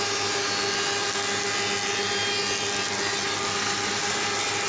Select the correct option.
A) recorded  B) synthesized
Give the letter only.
A